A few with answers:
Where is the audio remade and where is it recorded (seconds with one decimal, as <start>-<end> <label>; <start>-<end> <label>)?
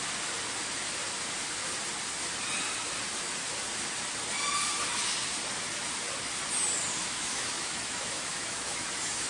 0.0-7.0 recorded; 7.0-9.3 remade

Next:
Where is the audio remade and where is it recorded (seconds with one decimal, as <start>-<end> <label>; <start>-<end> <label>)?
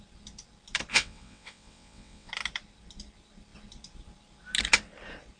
0.0-0.9 recorded; 0.9-2.3 remade; 2.3-5.4 recorded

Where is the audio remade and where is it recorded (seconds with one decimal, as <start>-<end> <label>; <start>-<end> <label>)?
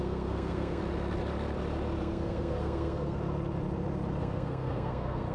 0.0-0.8 remade; 0.8-2.0 recorded; 2.0-3.2 remade; 3.2-4.2 recorded; 4.2-5.3 remade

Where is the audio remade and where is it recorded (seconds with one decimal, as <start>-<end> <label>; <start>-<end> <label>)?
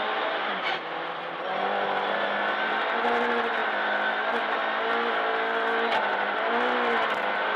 0.0-7.6 recorded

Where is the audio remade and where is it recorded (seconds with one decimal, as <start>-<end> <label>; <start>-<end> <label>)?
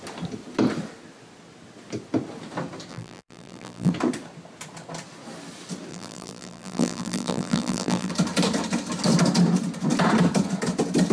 0.0-2.9 recorded; 2.9-3.9 remade; 3.9-5.9 recorded; 5.9-8.1 remade; 8.1-11.1 recorded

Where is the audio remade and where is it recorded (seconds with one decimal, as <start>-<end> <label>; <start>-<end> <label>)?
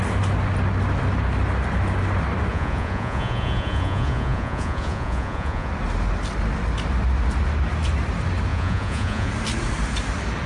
0.0-2.5 recorded; 2.5-5.7 remade; 5.7-8.5 recorded; 8.5-9.3 remade; 9.3-10.5 recorded